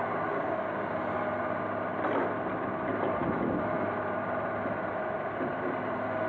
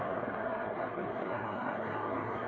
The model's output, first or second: second